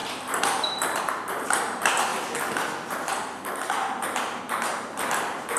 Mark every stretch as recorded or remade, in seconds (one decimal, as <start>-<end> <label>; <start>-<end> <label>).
0.0-2.1 remade; 2.1-4.4 recorded; 4.4-5.6 remade